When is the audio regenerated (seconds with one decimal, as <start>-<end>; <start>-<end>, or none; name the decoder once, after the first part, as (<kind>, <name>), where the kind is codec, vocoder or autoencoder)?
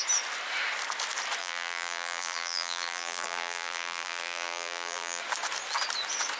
1.4-5.2 (vocoder, BigVGAN v2)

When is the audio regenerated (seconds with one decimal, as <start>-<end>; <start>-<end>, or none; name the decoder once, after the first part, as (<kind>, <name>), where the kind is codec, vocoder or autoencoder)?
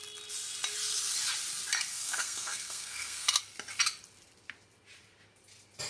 1.9-3.4 (codec, SNAC)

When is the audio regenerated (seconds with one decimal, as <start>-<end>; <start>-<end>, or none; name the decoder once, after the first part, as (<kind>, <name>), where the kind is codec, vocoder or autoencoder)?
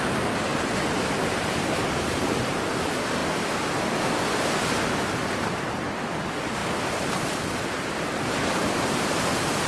none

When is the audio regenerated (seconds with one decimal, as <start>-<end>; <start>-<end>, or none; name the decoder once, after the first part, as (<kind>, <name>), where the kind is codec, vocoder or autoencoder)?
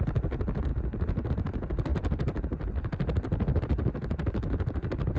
none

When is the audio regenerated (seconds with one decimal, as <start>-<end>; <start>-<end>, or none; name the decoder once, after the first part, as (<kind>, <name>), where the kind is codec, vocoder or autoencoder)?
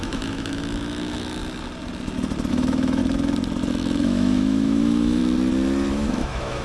0.0-1.4 (autoencoder, DAC-VAE); 2.5-3.0; 3.7-5.2; 5.9-6.6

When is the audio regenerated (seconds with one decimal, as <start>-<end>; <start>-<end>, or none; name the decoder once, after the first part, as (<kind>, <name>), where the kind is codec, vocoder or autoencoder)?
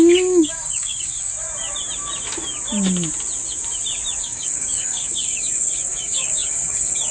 0.0-1.3 (codec, DAC); 4.2-7.1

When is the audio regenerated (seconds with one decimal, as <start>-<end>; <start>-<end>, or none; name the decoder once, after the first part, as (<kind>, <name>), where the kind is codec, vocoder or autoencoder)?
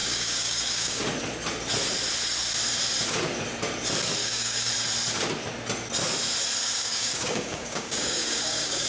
0.0-1.0 (codec, DAC); 4.2-4.7; 6.6-8.9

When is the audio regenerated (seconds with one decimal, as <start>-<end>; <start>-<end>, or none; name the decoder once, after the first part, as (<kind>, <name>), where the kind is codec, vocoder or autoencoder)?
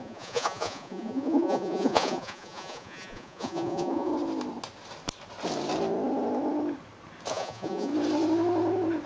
0.0-4.1 (vocoder, Vocos); 7.3-7.9